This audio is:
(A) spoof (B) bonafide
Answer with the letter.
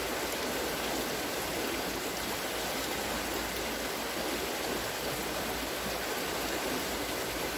B